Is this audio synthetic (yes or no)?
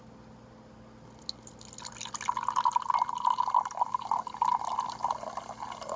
no